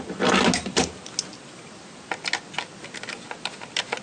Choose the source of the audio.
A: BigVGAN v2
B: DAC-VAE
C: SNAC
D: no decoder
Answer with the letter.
D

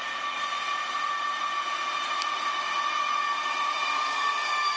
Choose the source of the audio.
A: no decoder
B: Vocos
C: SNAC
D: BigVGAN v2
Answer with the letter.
A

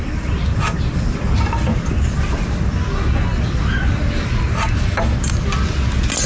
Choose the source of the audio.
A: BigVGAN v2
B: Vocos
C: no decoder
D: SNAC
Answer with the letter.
C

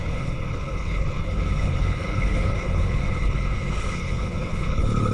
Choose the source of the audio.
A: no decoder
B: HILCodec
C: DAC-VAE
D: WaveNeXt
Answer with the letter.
B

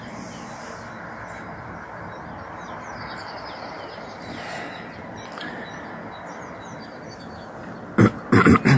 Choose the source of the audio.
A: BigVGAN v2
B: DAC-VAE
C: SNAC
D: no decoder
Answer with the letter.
D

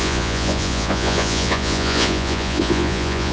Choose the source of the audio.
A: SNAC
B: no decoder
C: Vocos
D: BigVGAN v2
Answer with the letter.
C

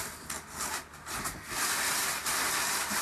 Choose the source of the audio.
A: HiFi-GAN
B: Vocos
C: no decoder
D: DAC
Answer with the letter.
C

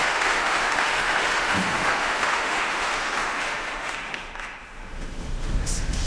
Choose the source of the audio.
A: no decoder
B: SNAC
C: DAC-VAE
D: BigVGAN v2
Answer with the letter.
C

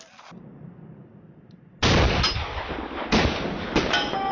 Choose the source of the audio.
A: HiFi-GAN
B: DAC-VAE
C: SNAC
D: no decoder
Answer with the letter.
D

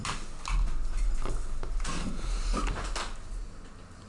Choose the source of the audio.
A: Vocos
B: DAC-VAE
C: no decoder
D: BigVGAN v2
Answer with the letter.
C